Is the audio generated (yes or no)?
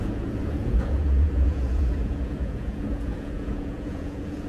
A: yes